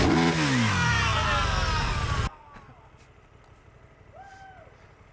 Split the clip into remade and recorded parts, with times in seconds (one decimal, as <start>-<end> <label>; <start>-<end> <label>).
0.0-5.1 recorded